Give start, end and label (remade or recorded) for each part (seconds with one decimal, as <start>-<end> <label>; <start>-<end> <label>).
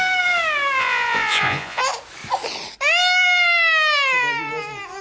0.0-0.8 recorded; 0.8-1.8 remade; 1.8-5.0 recorded